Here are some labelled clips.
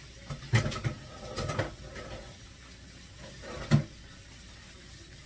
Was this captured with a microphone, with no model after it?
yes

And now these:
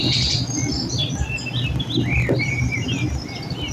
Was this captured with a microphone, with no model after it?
yes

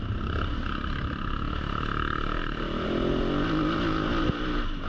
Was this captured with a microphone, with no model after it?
yes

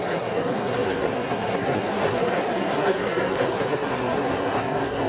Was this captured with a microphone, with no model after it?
no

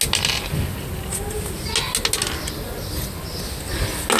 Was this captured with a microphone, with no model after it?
yes